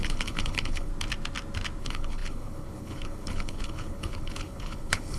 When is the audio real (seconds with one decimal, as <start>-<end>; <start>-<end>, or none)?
0.9-1.8